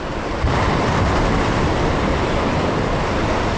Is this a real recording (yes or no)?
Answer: yes